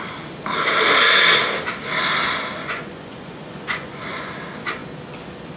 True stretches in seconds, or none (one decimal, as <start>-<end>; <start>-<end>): 0.0-2.6; 4.3-5.6